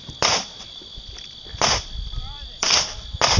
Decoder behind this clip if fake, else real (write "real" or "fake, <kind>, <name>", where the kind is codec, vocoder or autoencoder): fake, vocoder, BigVGAN v2